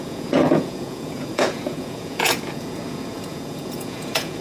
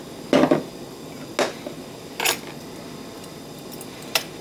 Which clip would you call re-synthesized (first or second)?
first